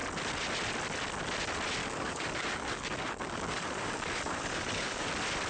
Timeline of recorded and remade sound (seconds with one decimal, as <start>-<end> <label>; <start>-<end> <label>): 0.0-1.8 recorded; 1.8-5.1 remade; 5.1-5.5 recorded